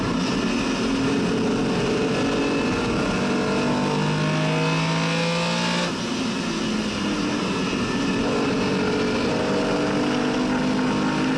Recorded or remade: recorded